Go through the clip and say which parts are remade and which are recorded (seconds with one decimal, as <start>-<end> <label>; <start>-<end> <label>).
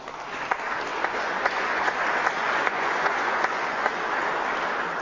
0.0-0.9 recorded; 0.9-2.0 remade; 2.0-2.4 recorded; 2.4-4.0 remade; 4.0-5.0 recorded